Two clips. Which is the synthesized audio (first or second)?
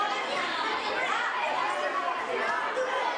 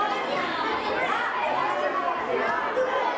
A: first